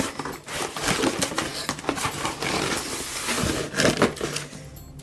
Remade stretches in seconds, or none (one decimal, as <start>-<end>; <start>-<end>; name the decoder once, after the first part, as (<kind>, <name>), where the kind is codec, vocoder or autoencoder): none